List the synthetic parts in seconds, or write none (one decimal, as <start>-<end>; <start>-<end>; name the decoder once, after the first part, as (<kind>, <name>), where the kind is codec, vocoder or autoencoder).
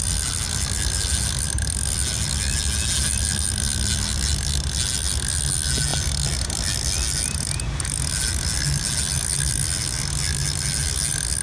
none